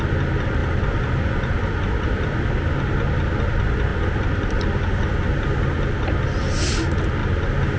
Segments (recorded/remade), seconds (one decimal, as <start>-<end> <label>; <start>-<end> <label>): 0.0-0.6 recorded; 0.6-2.5 remade; 2.5-7.8 recorded